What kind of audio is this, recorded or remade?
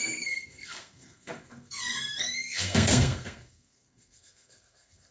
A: remade